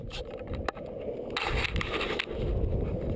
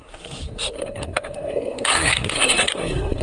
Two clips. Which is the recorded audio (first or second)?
first